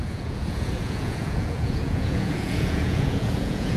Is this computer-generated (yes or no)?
yes